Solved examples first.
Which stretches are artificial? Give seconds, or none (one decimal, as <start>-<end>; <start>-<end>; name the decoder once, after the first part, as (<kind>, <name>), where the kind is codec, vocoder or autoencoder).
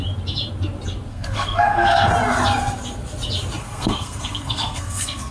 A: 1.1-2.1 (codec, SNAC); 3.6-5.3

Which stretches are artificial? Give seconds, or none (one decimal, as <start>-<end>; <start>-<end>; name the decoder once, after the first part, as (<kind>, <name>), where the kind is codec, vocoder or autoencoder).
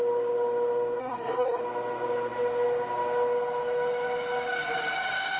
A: 1.0-1.6 (codec, SNAC)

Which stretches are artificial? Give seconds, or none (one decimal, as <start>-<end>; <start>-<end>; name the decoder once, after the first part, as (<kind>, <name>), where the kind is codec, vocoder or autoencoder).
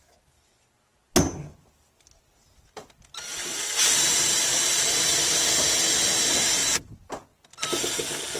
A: none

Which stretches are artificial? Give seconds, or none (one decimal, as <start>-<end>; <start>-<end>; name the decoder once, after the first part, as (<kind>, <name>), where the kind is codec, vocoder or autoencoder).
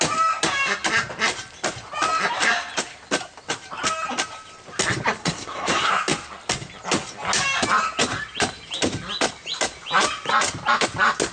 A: 5.2-5.9 (codec, SNAC)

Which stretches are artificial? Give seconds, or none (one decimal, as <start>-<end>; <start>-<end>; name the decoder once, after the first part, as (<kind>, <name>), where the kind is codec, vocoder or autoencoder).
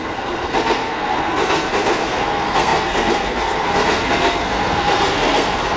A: 0.0-5.8 (codec, SNAC)